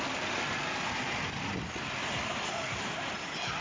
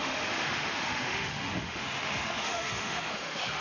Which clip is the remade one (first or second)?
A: second